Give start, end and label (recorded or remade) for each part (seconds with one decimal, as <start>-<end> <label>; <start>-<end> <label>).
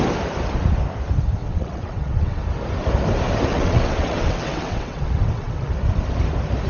0.0-1.4 recorded; 1.4-2.4 remade; 2.4-3.5 recorded; 3.5-5.7 remade; 5.7-6.7 recorded